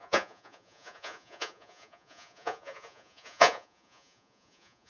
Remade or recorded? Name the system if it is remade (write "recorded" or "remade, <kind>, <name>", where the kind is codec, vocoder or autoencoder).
remade, vocoder, Vocos